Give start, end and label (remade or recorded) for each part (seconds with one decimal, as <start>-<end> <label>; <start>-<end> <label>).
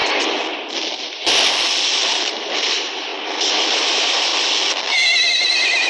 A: 0.0-1.5 recorded; 1.5-3.1 remade; 3.1-3.9 recorded; 3.9-4.3 remade; 4.3-5.3 recorded; 5.3-5.9 remade